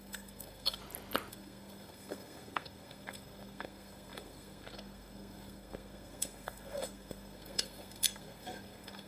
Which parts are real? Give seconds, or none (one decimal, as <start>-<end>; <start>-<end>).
0.8-1.3